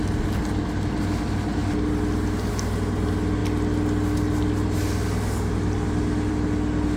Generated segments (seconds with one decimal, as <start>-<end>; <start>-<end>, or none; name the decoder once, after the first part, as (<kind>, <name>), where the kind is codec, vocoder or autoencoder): none